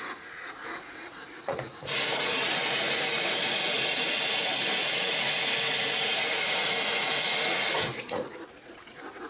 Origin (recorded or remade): remade